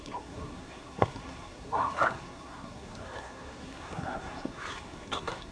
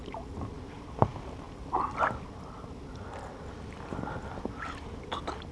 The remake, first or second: first